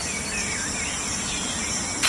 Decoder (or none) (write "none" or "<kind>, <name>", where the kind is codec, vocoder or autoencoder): none